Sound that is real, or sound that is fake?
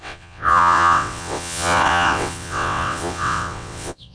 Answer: fake